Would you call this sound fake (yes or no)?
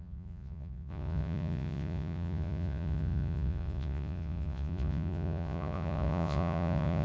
yes